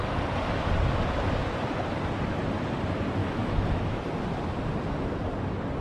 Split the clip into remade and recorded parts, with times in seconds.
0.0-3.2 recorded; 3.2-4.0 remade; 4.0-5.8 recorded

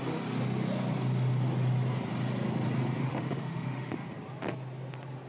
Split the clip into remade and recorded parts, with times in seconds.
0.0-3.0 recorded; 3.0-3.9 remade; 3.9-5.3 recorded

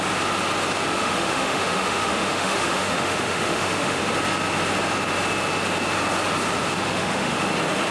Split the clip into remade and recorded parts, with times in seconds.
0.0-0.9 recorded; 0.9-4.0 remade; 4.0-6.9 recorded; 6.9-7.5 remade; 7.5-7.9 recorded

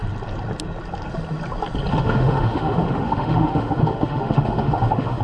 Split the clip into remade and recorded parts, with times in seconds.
0.0-1.9 recorded; 1.9-5.2 remade

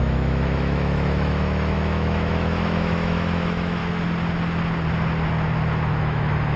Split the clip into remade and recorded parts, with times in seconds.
0.0-3.8 remade; 3.8-5.9 recorded; 5.9-6.6 remade

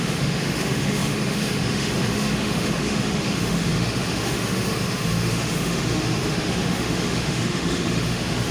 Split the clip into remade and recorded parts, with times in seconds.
0.0-8.5 remade